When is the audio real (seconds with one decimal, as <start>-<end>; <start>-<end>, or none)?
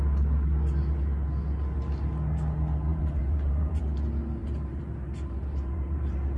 0.0-2.9; 3.8-4.4